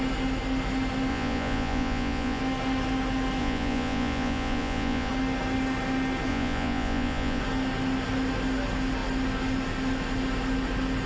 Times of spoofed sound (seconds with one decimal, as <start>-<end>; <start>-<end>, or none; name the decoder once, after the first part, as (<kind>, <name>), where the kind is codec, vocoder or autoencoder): 1.1-2.4 (vocoder, Vocos); 3.4-5.1; 6.3-7.4

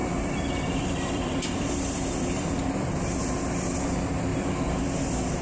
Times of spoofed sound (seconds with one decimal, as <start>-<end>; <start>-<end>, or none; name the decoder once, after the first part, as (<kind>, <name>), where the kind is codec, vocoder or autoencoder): 0.0-3.2 (vocoder, BigVGAN v2); 4.3-5.4